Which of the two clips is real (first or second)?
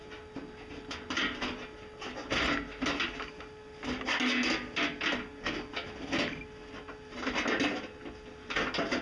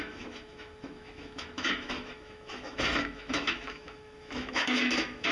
first